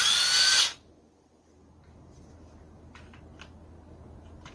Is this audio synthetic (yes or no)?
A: no